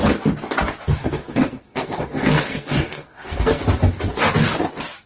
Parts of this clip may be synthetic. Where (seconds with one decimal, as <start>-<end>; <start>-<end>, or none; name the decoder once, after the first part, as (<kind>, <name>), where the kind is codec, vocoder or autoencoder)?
1.0-3.6 (codec, SNAC)